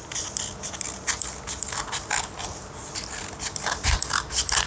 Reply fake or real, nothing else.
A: real